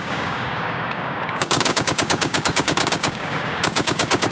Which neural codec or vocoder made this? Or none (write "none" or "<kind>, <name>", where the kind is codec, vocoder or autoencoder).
codec, DAC